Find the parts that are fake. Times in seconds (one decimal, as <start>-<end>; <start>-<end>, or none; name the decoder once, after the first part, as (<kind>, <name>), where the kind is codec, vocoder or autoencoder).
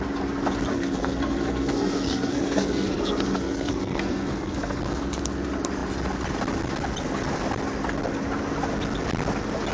0.7-4.8 (codec, SNAC)